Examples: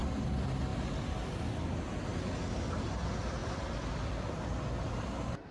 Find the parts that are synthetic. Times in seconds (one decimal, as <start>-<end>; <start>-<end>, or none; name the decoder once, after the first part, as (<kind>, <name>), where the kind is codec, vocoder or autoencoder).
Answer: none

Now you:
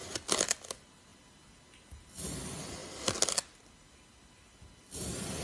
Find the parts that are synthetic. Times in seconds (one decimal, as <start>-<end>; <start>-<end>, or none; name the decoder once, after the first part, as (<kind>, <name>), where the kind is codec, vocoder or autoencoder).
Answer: none

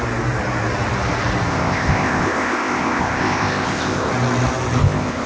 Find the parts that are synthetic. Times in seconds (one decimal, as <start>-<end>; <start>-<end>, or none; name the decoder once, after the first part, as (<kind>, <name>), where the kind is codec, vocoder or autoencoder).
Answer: 1.5-4.1 (codec, ZipCodec); 4.8-5.3

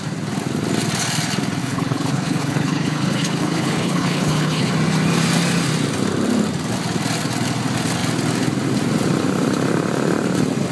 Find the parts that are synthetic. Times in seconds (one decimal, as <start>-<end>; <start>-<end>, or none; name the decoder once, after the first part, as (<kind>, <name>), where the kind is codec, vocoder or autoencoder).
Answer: 1.6-4.7 (codec, HILCodec)

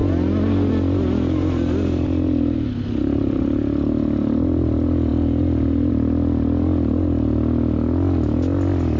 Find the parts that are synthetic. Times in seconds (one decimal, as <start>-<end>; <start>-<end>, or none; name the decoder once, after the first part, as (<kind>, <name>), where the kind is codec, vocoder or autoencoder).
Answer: none

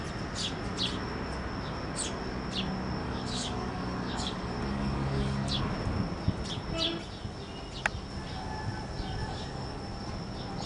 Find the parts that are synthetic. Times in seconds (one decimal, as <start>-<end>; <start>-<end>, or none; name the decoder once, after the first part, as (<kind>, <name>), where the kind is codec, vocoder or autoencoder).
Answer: 3.0-5.6 (codec, DAC); 9.2-9.8

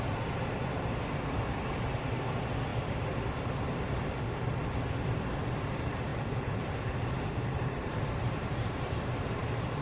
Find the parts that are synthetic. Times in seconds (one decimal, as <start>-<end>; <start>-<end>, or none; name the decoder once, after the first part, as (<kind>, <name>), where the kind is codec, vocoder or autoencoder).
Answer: 6.1-9.3 (vocoder, BigVGAN v2)

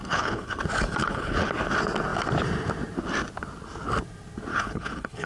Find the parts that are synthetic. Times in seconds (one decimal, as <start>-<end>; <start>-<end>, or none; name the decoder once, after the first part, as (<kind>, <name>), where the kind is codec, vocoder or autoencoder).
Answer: 0.0-0.6 (codec, HILCodec); 1.0-1.5; 4.5-5.3